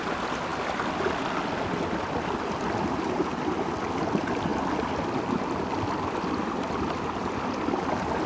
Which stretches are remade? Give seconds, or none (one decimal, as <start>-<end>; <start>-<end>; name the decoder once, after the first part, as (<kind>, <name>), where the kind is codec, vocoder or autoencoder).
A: none